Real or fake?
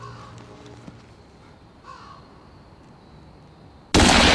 real